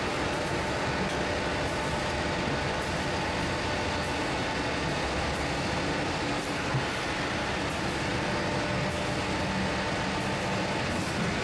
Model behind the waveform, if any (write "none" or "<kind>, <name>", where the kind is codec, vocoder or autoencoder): none